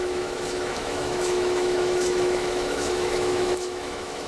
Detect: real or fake fake